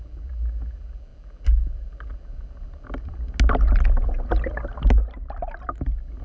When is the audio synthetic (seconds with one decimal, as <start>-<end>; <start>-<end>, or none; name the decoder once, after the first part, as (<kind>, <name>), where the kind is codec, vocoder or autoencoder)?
none